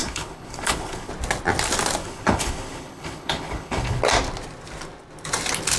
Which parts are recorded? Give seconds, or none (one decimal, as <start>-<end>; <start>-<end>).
1.1-2.0; 4.0-5.8